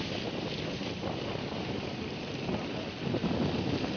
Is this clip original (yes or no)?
yes